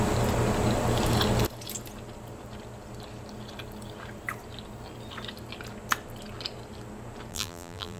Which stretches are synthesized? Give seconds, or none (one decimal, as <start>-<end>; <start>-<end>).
7.3-8.0